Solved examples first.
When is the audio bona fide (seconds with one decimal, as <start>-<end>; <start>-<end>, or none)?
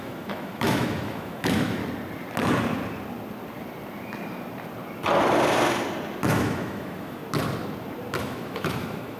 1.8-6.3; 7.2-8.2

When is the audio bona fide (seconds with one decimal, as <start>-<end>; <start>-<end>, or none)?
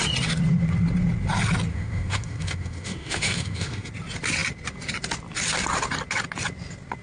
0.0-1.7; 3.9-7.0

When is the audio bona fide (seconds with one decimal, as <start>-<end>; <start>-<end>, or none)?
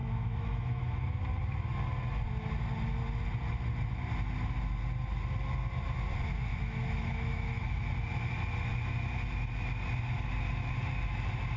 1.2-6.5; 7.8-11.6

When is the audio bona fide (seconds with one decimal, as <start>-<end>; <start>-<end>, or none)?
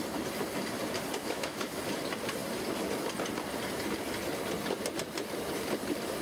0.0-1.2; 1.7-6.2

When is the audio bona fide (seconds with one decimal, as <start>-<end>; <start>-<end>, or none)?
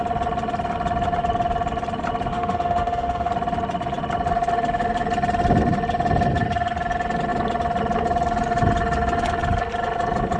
0.0-2.3; 3.3-10.4